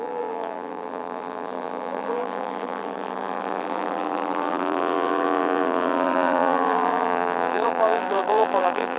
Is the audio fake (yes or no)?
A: yes